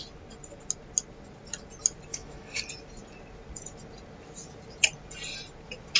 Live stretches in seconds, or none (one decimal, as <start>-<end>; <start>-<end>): 0.0-2.1; 2.6-6.0